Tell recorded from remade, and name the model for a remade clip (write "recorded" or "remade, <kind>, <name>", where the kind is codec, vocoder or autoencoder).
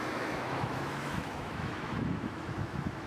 remade, autoencoder, DAC-VAE